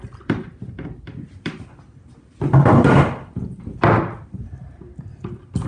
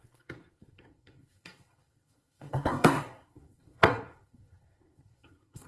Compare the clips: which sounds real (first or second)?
first